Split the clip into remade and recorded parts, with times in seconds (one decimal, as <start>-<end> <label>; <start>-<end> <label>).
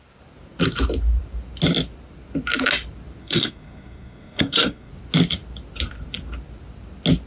0.0-3.2 recorded; 3.2-4.9 remade; 4.9-7.3 recorded